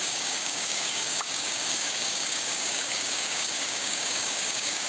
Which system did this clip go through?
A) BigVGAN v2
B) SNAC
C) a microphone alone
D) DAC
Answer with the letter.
D